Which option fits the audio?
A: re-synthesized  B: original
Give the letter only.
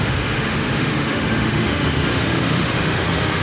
A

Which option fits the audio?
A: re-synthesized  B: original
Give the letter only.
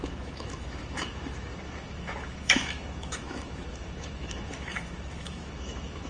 A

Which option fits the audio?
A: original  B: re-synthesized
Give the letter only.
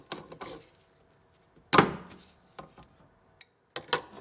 A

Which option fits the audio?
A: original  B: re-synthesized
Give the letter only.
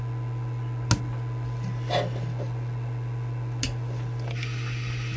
A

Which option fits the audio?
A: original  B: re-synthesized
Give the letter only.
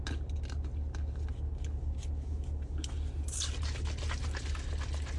A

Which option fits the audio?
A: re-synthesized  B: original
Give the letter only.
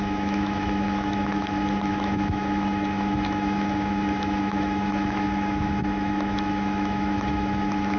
A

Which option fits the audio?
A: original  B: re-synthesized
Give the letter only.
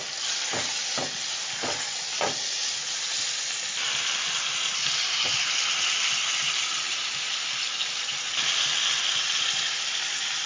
A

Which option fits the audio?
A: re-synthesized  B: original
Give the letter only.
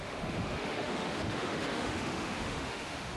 A